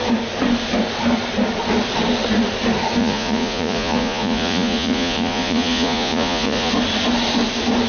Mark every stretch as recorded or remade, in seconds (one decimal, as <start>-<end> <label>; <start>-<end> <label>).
0.0-3.0 recorded; 3.0-6.7 remade; 6.7-7.9 recorded